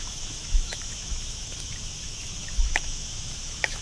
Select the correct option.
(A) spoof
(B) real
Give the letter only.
A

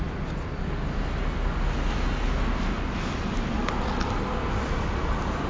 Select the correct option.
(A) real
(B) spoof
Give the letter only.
A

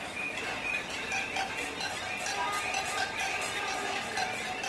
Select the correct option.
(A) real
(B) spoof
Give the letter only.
B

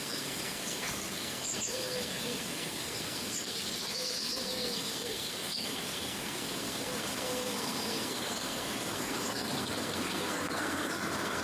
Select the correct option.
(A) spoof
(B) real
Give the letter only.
A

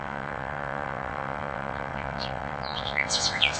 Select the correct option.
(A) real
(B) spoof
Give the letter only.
B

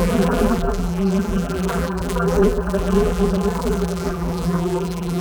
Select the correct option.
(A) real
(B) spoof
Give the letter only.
B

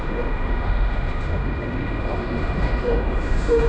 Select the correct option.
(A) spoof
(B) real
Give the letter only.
A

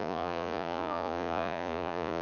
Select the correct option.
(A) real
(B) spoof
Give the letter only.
B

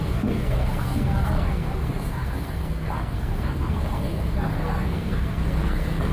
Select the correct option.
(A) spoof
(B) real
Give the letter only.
A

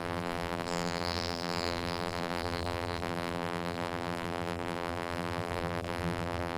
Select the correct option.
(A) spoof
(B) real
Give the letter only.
A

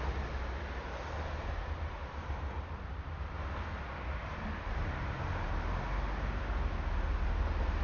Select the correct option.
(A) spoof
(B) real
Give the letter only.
B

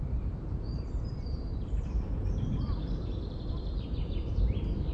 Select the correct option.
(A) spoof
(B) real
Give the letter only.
A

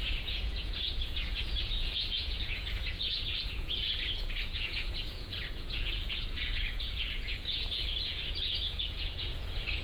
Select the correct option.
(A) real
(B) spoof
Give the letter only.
B